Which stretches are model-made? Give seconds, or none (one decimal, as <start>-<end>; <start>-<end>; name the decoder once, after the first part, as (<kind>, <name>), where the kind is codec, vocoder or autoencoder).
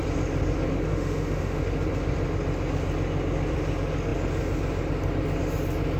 0.9-1.6 (autoencoder, DAC-VAE)